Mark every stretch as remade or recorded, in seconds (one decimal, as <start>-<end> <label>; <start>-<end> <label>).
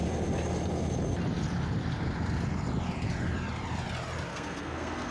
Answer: 0.0-4.3 recorded; 4.3-5.1 remade